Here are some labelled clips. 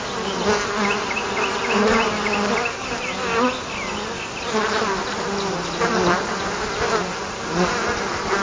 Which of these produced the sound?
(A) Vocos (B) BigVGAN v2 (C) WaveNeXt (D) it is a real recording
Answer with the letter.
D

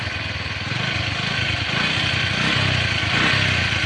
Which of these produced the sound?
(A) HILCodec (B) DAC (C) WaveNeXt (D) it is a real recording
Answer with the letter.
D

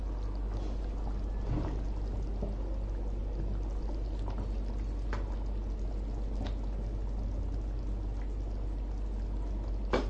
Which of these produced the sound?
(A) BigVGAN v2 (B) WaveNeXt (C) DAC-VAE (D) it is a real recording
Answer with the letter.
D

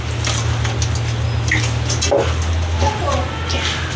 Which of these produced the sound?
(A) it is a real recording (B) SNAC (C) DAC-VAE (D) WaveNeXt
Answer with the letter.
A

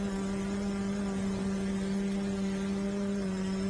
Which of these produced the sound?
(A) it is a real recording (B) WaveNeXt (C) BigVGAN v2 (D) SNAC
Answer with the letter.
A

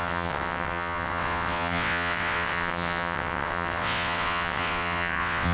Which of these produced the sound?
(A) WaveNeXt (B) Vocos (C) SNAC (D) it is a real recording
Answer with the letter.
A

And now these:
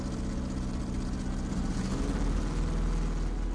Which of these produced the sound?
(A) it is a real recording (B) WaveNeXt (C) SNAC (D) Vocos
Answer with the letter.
A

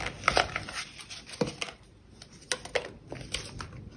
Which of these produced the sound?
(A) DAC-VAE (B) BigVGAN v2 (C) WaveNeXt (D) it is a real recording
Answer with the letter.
D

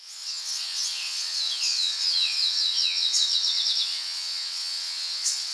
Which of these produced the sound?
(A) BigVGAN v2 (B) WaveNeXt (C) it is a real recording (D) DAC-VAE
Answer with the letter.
B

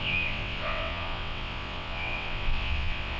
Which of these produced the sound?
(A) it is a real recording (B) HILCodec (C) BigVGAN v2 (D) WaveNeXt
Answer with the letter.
D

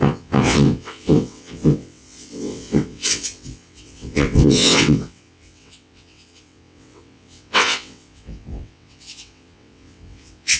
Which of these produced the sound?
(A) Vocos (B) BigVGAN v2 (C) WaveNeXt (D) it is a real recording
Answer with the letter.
C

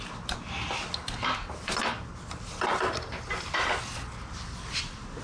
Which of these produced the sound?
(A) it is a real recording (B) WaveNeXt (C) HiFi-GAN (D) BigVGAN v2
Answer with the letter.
A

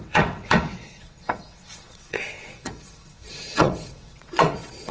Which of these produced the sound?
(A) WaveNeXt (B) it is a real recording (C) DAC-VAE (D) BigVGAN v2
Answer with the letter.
A